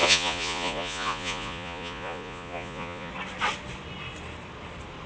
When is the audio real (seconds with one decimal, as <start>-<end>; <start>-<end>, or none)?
3.1-5.1